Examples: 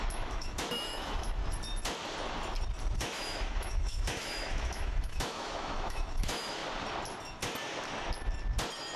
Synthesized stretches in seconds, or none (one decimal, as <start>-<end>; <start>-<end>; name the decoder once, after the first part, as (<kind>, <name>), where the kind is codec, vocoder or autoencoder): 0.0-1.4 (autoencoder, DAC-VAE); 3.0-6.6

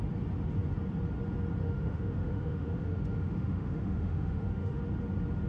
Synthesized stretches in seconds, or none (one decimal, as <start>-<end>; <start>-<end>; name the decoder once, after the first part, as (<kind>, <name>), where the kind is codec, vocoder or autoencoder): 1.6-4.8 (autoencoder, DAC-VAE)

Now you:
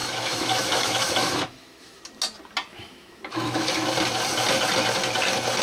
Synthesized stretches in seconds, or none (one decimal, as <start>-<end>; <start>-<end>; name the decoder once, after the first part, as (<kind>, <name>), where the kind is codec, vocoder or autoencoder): 0.0-2.0 (autoencoder, DAC-VAE); 2.7-3.7

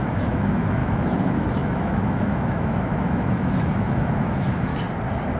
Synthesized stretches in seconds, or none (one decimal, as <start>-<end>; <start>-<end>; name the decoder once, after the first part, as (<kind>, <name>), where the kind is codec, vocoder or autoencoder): 0.0-4.7 (autoencoder, DAC-VAE)

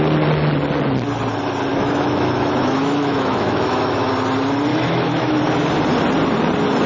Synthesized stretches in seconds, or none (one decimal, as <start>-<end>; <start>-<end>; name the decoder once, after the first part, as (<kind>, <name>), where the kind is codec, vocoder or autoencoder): 1.7-4.1 (autoencoder, DAC-VAE); 4.7-5.4

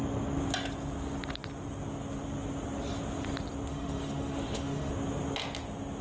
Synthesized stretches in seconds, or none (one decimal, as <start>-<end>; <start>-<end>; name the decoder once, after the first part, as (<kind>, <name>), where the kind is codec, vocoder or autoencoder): 3.7-4.9 (autoencoder, DAC-VAE)

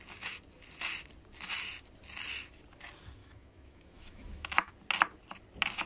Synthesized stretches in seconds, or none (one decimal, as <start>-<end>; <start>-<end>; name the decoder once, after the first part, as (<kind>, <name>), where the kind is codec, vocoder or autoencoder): 3.2-4.7 (autoencoder, DAC-VAE)